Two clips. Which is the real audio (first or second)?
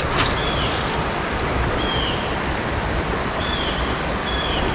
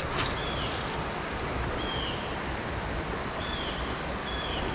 second